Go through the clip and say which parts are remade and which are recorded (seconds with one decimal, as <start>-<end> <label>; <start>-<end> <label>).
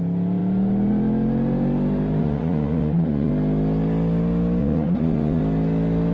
0.0-2.2 recorded; 2.2-3.3 remade; 3.3-4.6 recorded; 4.6-5.4 remade; 5.4-6.1 recorded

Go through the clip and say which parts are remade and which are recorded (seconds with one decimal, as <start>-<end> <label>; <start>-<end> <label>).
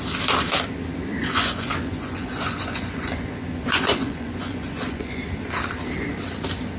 0.0-1.2 recorded; 1.2-5.2 remade; 5.2-6.8 recorded